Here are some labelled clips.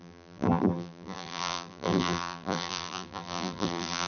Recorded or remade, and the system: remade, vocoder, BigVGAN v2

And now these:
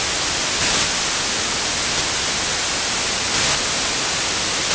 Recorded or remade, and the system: recorded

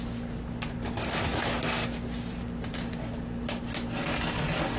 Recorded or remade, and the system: recorded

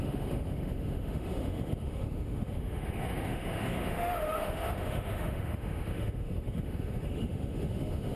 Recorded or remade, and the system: remade, autoencoder, DAC-VAE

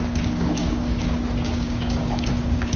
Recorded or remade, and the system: remade, codec, DAC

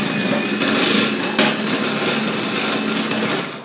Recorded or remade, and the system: recorded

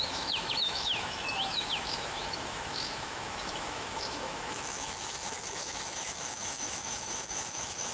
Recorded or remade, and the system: remade, autoencoder, DAC-VAE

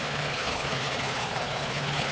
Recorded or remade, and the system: remade, codec, HILCodec